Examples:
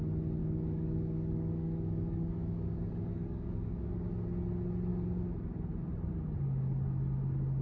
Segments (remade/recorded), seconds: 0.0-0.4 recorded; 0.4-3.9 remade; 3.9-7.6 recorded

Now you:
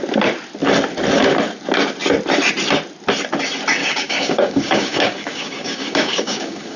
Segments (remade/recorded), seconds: 0.0-3.8 recorded; 3.8-6.8 remade